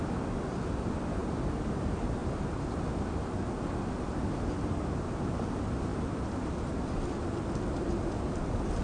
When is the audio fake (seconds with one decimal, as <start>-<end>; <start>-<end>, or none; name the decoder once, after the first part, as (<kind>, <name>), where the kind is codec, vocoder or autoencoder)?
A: none